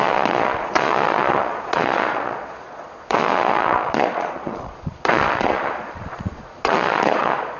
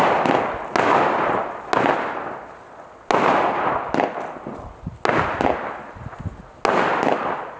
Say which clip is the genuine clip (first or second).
second